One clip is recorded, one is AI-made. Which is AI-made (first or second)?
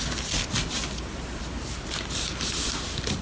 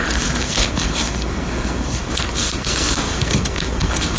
second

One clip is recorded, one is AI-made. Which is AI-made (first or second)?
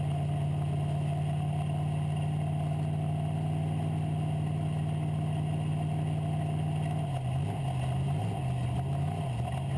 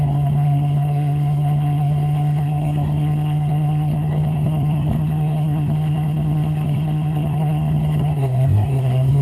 second